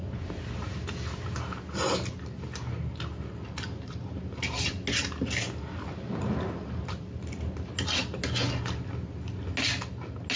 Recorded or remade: recorded